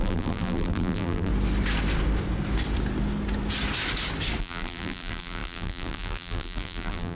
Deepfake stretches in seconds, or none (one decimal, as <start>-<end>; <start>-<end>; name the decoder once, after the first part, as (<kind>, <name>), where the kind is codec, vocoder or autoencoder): 0.0-1.3 (vocoder, BigVGAN v2); 4.4-7.1